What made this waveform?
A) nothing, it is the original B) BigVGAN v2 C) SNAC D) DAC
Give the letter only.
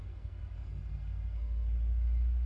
C